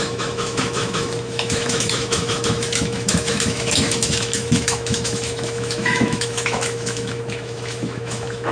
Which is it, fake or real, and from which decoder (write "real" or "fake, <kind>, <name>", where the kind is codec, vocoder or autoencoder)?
fake, autoencoder, DAC-VAE